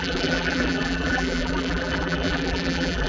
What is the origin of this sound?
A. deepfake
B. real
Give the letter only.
A